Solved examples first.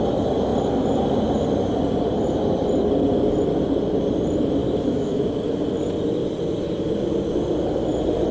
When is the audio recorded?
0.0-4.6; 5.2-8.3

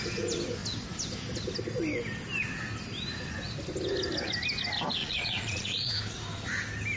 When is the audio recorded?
0.0-5.0; 5.9-7.0

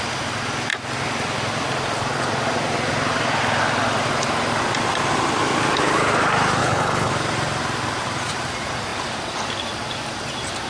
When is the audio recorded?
0.0-6.6; 7.1-10.7

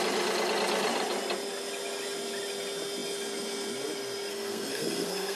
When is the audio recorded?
0.0-4.3

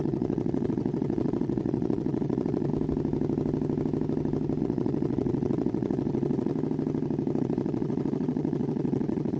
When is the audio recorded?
2.7-4.6; 6.5-7.4

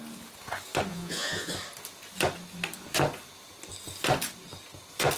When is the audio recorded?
0.0-0.9; 1.5-5.2